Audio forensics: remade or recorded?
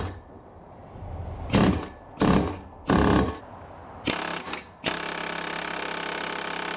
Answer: recorded